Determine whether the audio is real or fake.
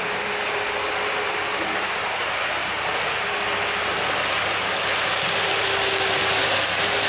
real